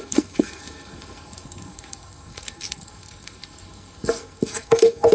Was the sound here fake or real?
fake